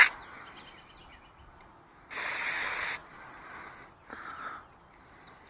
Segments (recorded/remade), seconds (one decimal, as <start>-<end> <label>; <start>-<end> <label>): 0.0-5.5 recorded